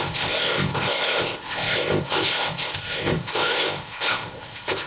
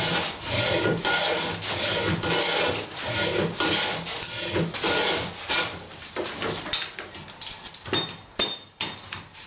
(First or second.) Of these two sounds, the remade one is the first